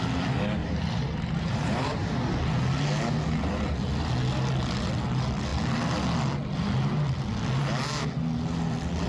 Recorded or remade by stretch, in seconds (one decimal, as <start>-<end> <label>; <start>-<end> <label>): 0.0-0.6 recorded; 0.6-2.3 remade; 2.3-9.1 recorded